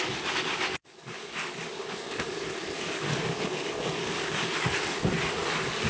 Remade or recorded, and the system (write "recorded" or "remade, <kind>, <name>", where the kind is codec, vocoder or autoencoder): remade, codec, DAC